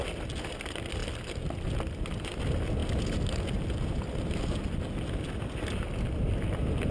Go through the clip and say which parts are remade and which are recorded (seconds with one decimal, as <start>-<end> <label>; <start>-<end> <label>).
0.0-1.0 recorded; 1.0-2.4 remade; 2.4-6.9 recorded